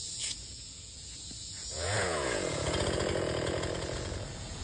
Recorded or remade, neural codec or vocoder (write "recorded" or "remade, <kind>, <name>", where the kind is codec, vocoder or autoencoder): remade, vocoder, Vocos